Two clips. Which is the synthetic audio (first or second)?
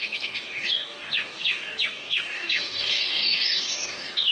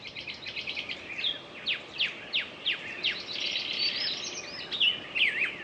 first